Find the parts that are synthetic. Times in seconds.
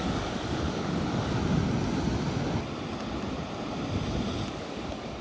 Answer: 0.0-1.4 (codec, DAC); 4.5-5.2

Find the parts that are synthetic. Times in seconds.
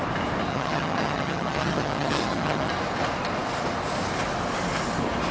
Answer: 0.5-2.7 (vocoder, HiFi-GAN)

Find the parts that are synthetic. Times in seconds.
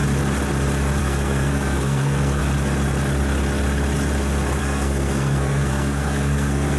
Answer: 1.0-2.4 (codec, SNAC); 4.6-6.8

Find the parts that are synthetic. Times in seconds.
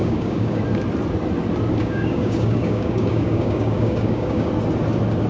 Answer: 0.0-0.6 (codec, DAC); 1.8-4.5